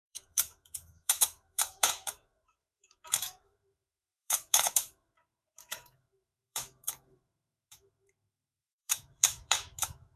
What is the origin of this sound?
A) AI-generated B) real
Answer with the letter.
A